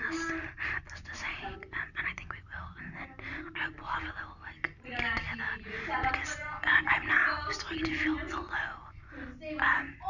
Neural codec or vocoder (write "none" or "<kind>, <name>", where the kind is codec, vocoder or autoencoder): none